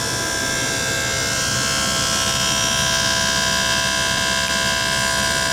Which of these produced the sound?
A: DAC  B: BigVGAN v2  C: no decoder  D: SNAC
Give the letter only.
C